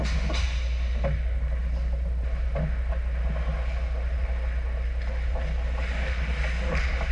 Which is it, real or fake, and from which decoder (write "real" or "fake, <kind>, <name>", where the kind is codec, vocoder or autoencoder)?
real